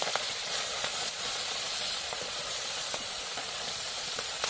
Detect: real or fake fake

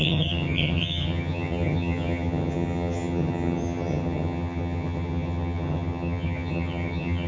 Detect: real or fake fake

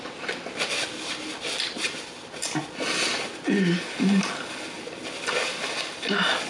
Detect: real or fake real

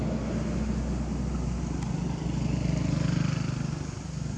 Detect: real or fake real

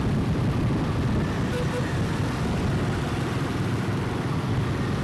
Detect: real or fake real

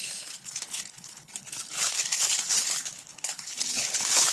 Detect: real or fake fake